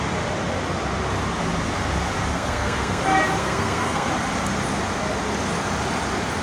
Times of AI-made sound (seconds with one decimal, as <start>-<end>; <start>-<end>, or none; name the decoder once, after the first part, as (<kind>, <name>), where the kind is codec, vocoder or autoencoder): 2.3-3.0 (codec, SNAC); 3.4-4.1